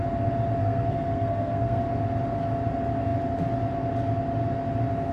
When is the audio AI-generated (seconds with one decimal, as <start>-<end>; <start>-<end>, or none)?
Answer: 0.6-1.8